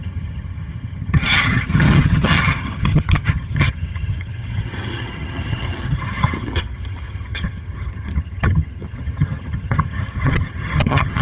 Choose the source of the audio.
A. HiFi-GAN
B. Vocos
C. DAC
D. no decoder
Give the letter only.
A